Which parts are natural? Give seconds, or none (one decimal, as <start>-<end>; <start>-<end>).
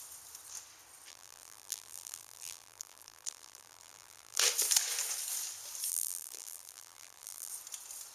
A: 0.0-1.1; 4.4-5.9; 7.5-8.1